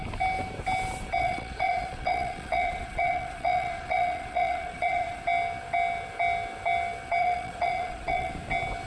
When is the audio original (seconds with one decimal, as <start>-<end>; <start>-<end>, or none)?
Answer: 0.0-1.2; 5.2-7.2; 8.3-8.9